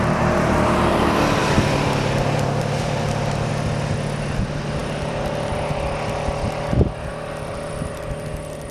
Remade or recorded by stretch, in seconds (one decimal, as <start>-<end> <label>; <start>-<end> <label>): 0.0-1.4 recorded; 1.4-3.5 remade; 3.5-4.8 recorded; 4.8-5.5 remade; 5.5-7.1 recorded; 7.1-8.1 remade; 8.1-8.7 recorded